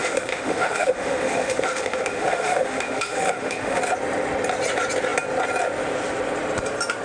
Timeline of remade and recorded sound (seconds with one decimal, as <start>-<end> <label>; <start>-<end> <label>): 0.0-3.8 remade; 3.8-7.0 recorded